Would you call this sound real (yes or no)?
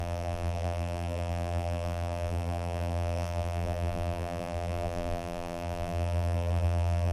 no